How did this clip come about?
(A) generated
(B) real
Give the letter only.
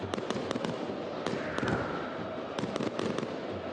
B